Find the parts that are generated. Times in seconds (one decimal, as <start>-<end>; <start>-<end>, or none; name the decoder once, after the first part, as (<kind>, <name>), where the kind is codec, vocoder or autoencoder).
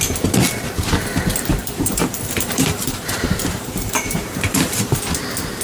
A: 1.6-5.0 (vocoder, BigVGAN v2)